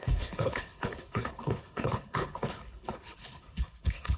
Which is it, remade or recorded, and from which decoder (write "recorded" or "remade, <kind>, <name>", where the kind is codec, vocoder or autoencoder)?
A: remade, codec, HILCodec